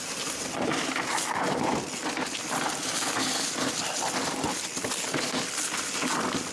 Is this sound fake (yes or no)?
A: no